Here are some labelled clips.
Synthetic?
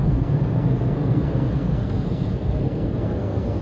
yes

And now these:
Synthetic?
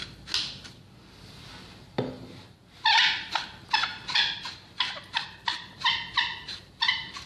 no